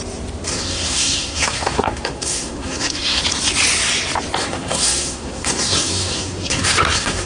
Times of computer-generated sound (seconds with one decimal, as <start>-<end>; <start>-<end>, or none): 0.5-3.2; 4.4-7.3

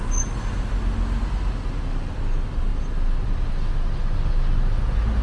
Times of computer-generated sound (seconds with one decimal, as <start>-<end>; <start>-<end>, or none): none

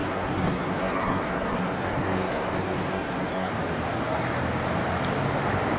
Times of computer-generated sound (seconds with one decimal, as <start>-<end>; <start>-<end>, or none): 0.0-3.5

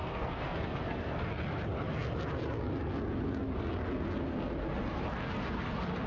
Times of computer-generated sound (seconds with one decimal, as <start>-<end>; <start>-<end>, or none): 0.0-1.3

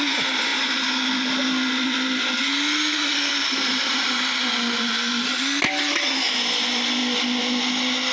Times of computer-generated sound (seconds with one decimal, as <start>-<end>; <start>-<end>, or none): none

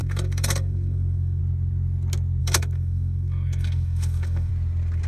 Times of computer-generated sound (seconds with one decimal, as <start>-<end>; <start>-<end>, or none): 0.0-1.4; 2.4-4.5

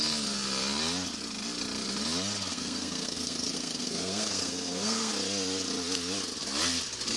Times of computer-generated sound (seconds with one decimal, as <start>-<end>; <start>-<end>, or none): 2.5-5.1